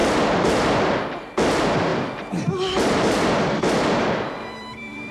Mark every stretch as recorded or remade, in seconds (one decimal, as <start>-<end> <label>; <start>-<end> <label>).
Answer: 0.0-1.0 remade; 1.0-1.9 recorded; 1.9-5.1 remade